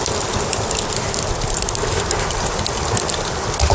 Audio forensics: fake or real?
real